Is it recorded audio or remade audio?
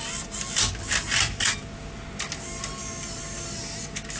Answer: recorded